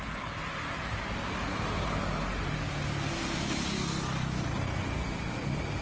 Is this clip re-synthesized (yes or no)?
no